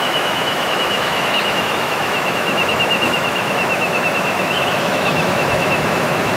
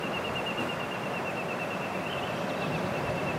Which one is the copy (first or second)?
first